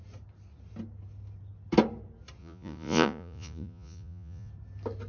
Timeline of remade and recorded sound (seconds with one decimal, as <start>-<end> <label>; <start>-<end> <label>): 0.0-2.4 recorded; 2.4-4.5 remade; 4.5-5.1 recorded